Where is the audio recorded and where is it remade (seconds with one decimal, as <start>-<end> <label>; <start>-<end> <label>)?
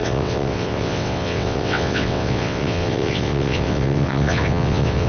0.0-5.1 remade